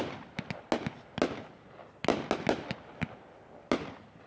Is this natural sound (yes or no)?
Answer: yes